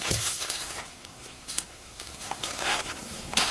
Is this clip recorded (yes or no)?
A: no